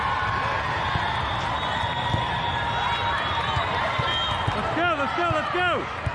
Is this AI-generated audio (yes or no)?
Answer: no